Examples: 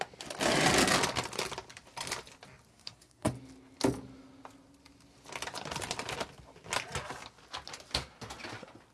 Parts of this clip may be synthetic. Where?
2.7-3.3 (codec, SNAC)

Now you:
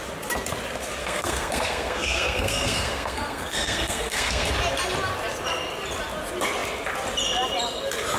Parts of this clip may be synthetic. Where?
1.0-4.5 (codec, SNAC)

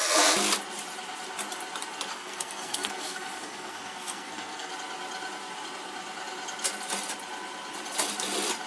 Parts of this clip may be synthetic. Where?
2.1-4.7 (codec, SNAC)

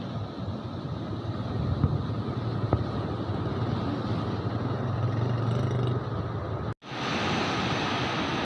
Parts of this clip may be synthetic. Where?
none

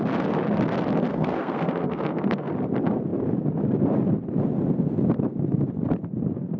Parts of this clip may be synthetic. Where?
1.1-2.5 (codec, SNAC)

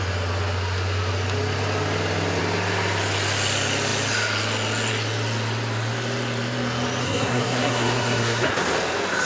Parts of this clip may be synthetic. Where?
7.0-8.5 (codec, SNAC)

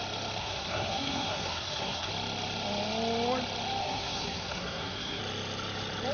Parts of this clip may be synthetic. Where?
0.4-2.1 (codec, SNAC); 3.8-5.2

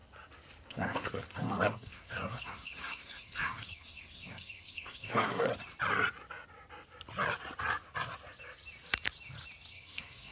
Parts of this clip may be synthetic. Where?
0.7-5.5 (codec, SNAC); 9.7-10.3